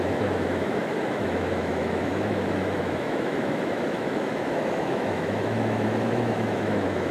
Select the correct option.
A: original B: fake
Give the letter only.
B